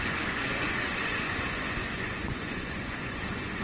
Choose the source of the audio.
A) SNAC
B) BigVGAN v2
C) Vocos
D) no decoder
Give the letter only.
C